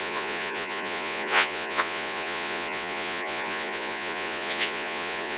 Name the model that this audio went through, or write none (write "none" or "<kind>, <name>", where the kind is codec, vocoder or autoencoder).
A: vocoder, Vocos